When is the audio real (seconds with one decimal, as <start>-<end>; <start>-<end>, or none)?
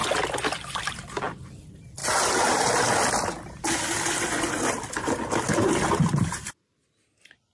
0.0-7.5